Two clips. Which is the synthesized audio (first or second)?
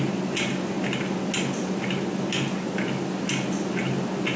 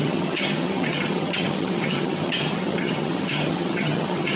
second